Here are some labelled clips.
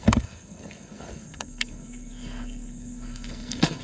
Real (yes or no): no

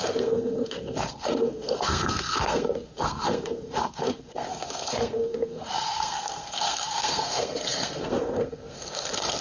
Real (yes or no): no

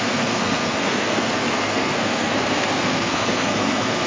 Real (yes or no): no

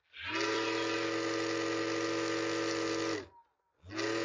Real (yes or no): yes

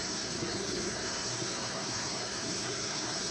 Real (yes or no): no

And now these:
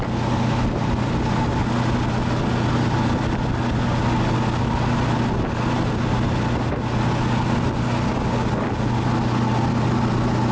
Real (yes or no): yes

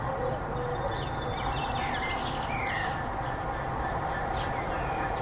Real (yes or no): yes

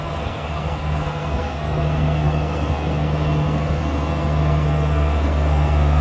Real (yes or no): no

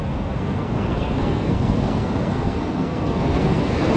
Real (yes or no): no